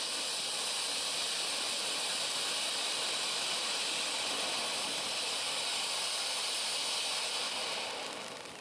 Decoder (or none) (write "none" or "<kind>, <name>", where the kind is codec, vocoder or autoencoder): none